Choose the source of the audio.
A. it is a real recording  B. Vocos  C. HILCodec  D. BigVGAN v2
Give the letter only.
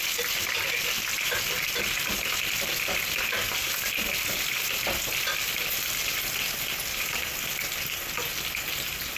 A